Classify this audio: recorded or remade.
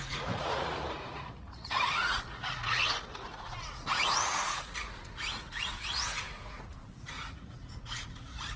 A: remade